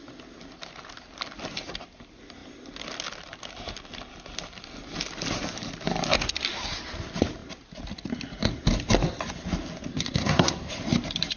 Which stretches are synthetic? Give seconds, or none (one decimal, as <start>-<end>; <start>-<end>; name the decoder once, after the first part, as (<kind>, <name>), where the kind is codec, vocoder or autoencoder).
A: 9.9-10.7 (codec, SNAC)